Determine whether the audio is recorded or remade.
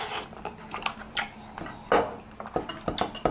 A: recorded